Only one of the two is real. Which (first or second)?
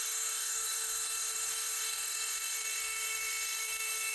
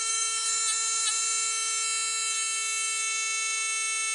second